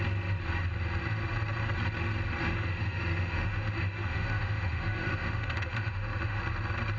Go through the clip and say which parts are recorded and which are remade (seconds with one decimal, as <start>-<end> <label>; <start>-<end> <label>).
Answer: 0.0-2.4 recorded; 2.4-6.4 remade; 6.4-7.0 recorded